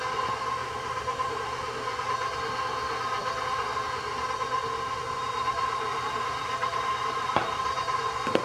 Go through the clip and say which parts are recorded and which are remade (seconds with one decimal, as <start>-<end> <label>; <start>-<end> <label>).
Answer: 0.0-0.6 recorded; 0.6-2.1 remade; 2.1-5.0 recorded; 5.0-8.0 remade; 8.0-8.4 recorded